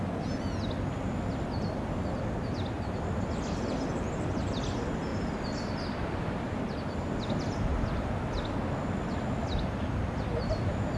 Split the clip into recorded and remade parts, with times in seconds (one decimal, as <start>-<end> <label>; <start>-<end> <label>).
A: 0.0-5.1 recorded; 5.1-7.2 remade; 7.2-11.0 recorded